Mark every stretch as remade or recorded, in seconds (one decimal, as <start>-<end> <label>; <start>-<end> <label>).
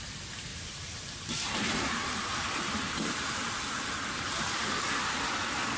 0.0-0.5 recorded; 0.5-4.0 remade; 4.0-5.8 recorded